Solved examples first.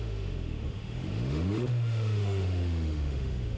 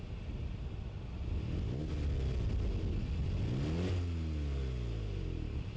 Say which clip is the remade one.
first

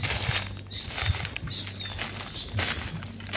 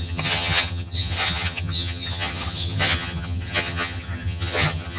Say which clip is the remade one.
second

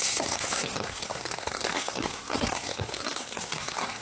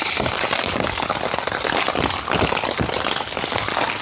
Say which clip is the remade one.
first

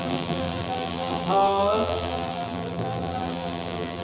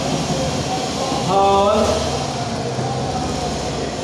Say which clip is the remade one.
first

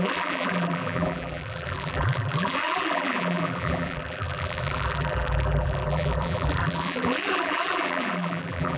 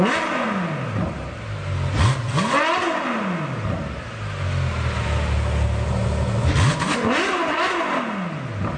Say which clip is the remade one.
first